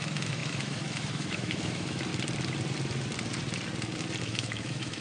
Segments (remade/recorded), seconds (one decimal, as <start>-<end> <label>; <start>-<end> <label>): 0.0-2.1 remade; 2.1-4.2 recorded; 4.2-5.0 remade